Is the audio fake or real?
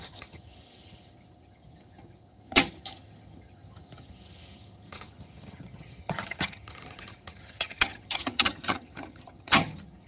fake